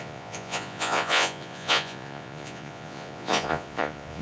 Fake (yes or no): yes